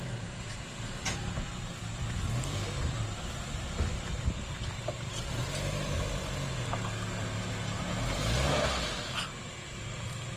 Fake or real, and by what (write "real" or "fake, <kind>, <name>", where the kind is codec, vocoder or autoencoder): real